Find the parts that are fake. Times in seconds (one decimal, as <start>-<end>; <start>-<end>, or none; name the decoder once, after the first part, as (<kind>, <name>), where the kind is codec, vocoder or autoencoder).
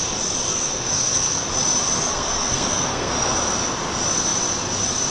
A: 0.5-1.4 (codec, SNAC); 2.1-3.1